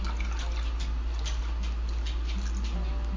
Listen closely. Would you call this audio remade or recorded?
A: recorded